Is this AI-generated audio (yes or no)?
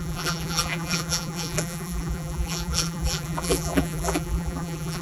yes